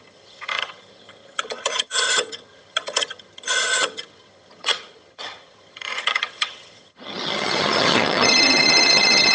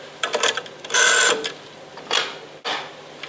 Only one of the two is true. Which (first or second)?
second